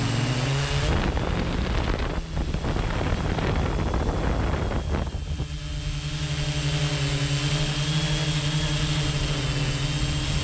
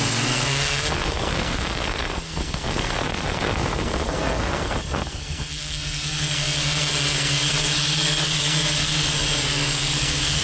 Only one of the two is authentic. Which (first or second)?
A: first